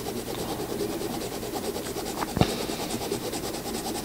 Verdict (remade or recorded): remade